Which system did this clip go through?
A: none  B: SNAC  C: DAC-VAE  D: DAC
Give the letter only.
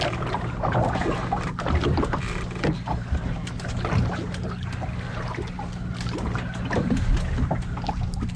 A